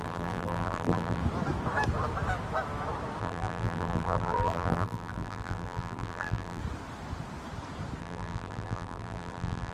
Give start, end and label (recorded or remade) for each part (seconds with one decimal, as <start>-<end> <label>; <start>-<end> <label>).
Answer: 0.0-1.2 remade; 1.2-3.2 recorded; 3.2-6.6 remade; 6.6-8.0 recorded; 8.0-9.7 remade